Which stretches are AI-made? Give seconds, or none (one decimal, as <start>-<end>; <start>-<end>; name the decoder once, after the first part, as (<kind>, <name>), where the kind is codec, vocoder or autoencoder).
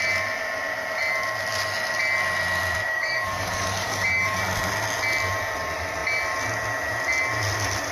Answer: 2.9-4.4 (codec, DAC)